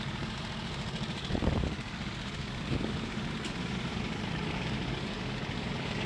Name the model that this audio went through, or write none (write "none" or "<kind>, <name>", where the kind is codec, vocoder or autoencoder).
codec, DAC